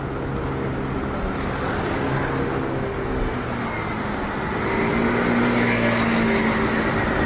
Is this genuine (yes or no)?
yes